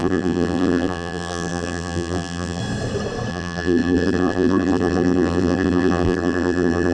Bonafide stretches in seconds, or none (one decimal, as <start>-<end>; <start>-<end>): 2.6-3.3